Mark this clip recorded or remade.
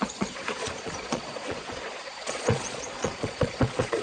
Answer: remade